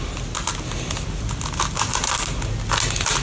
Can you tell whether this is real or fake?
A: real